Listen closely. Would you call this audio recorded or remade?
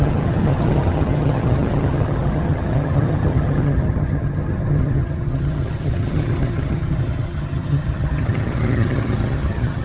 remade